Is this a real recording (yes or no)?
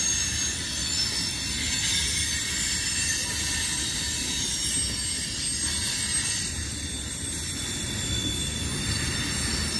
yes